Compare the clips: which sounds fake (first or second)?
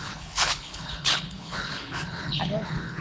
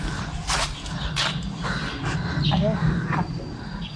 first